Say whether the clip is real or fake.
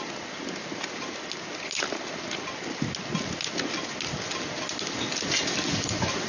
real